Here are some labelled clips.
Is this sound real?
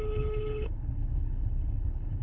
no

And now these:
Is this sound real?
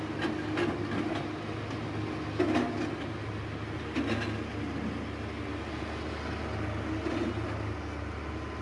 yes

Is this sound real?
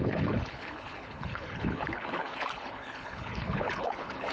no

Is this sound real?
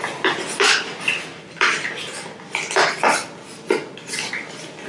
yes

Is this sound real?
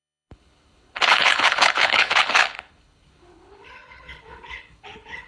no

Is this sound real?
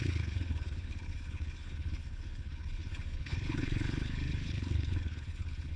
no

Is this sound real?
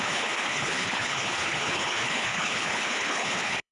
no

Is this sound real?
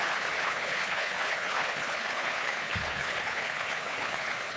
no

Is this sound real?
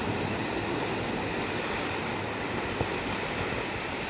yes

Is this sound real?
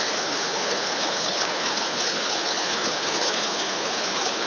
no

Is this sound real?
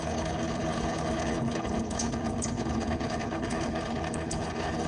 no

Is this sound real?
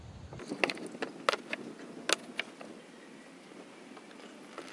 yes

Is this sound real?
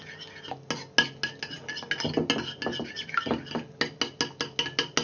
yes